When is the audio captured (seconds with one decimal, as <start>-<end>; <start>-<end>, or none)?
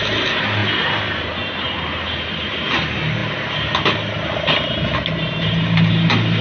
0.0-6.4